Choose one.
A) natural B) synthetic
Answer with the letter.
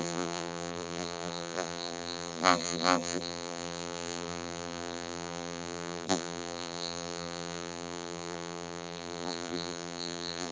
B